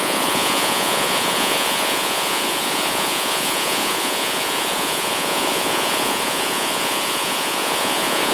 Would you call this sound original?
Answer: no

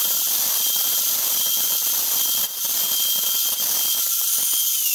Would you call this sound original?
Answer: yes